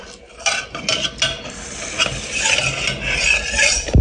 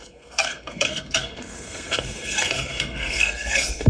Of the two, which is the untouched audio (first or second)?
first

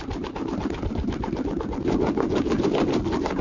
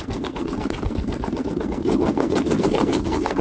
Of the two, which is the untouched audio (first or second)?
first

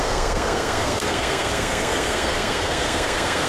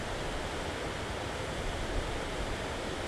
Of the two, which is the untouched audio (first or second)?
second